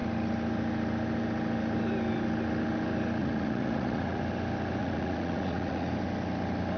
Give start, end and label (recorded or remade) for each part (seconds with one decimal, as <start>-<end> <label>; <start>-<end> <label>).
0.0-3.2 recorded; 3.2-4.2 remade; 4.2-4.8 recorded; 4.8-5.9 remade; 5.9-6.8 recorded